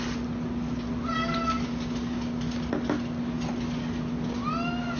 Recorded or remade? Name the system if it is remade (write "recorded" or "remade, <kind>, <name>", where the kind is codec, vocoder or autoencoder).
recorded